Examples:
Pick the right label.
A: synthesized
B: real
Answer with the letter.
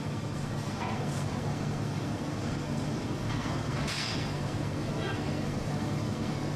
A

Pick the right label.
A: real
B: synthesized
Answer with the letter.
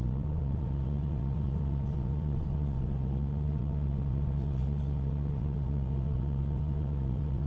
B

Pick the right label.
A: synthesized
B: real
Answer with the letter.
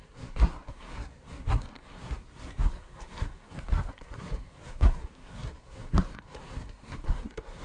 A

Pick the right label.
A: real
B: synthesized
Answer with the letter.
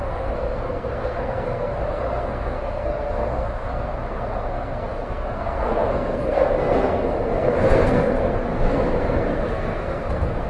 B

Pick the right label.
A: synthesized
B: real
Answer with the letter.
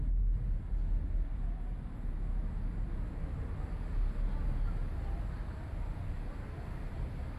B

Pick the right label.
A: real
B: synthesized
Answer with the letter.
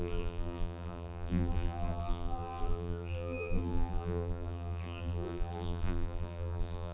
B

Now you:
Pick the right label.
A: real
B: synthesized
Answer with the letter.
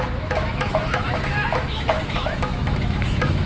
B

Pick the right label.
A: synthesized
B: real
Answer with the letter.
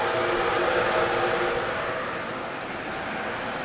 B